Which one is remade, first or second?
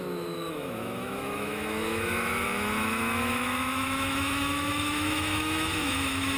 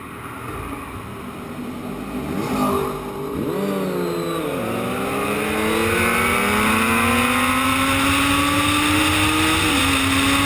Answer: first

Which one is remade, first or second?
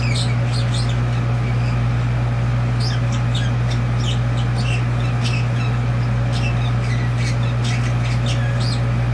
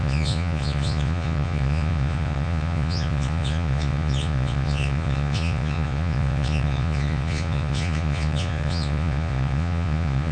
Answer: second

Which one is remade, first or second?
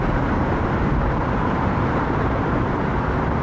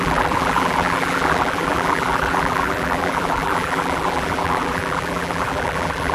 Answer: second